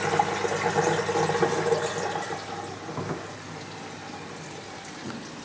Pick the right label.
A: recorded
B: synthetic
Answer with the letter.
A